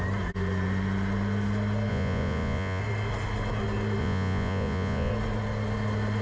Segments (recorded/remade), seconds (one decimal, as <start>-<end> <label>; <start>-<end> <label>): 0.0-1.9 recorded; 1.9-2.8 remade; 2.8-4.0 recorded; 4.0-5.1 remade; 5.1-6.2 recorded